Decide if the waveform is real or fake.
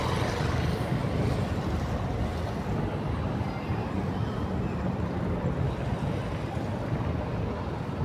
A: real